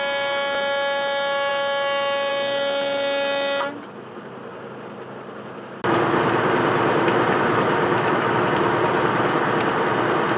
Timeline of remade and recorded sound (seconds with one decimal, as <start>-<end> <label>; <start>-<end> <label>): 0.0-7.9 recorded; 7.9-8.5 remade; 8.5-10.4 recorded